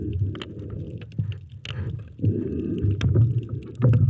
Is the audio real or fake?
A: real